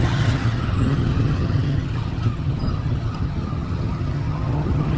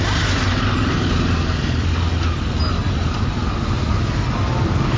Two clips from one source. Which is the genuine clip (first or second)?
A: second